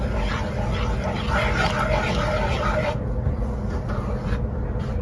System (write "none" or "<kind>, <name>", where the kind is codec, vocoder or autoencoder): none